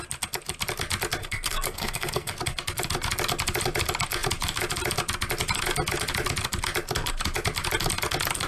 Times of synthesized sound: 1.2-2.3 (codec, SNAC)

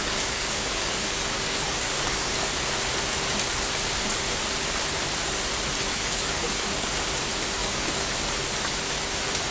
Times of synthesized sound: 0.0-2.5 (codec, DAC); 5.9-6.9; 7.6-8.1

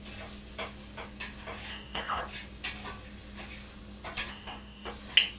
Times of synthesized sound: 1.7-2.2 (codec, DAC); 4.3-4.9

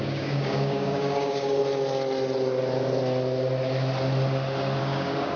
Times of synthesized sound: 0.0-1.6 (codec, DAC); 4.8-5.4

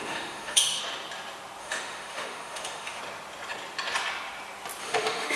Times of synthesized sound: 0.0-0.8 (autoencoder, DAC-VAE); 1.6-3.0; 4.8-5.4